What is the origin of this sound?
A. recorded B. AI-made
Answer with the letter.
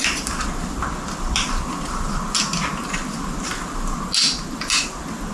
A